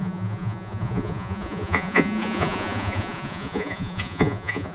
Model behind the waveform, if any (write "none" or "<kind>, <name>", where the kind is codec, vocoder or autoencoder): vocoder, Vocos